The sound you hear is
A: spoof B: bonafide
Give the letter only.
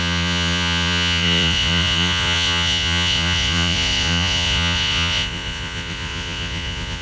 A